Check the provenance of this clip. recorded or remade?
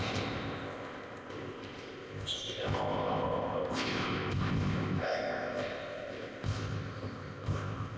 remade